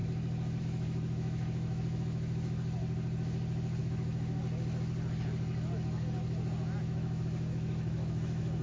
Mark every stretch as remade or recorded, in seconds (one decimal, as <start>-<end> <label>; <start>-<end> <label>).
0.0-0.6 recorded; 0.6-2.8 remade; 2.8-3.8 recorded; 3.8-4.4 remade; 4.4-6.8 recorded; 6.8-8.6 remade